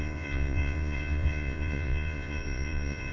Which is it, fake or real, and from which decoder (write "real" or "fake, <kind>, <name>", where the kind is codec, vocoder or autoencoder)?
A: fake, vocoder, Vocos